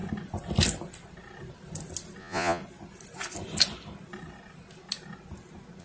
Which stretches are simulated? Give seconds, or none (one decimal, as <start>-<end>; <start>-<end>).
2.2-2.6

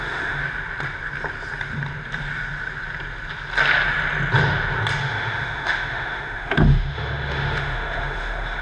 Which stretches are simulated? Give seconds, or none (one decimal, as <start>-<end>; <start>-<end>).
0.0-0.4; 5.0-8.6

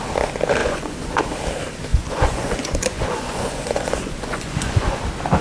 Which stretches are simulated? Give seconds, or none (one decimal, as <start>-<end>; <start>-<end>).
0.6-1.2; 1.9-5.0

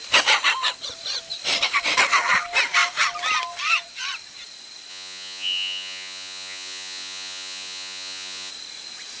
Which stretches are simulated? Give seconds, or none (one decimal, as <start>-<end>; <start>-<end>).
4.9-8.5

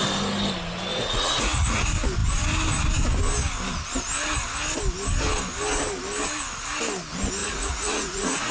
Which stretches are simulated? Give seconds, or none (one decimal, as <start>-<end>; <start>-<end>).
0.9-1.8; 7.4-8.5

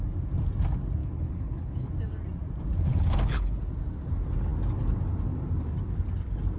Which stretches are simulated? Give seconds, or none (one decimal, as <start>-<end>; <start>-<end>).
1.0-1.9; 2.9-3.6

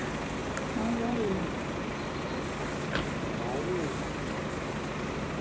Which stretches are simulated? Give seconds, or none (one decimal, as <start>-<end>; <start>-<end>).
0.4-1.6

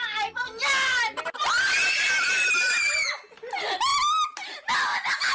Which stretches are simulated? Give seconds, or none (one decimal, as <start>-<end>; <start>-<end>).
none